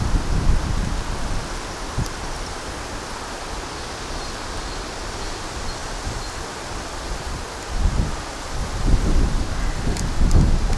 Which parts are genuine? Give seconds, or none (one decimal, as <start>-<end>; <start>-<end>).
0.0-8.6; 9.2-10.8